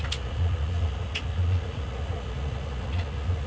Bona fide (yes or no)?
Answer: no